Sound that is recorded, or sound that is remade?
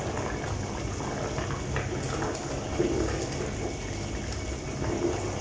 recorded